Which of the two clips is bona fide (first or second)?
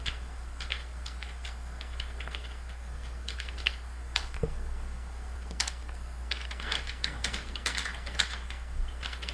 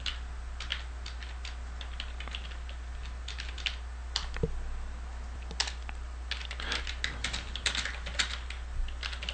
second